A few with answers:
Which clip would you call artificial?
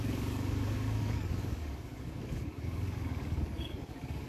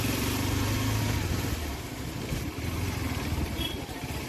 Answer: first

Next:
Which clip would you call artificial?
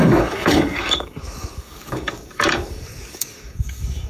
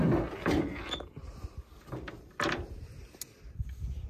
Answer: first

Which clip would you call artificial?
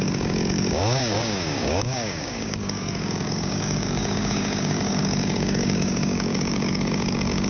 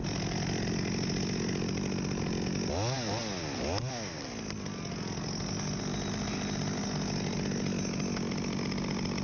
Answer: first